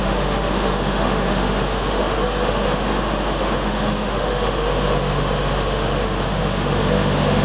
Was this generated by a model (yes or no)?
yes